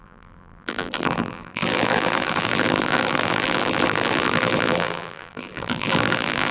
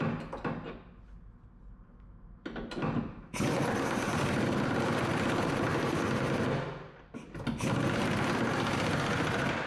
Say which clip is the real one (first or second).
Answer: second